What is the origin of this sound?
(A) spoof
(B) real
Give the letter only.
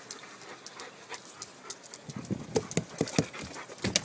B